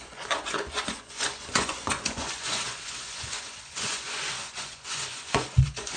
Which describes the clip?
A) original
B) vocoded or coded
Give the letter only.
B